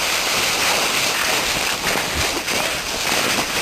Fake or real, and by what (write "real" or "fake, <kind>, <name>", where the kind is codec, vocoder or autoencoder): real